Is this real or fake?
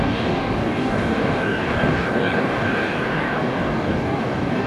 fake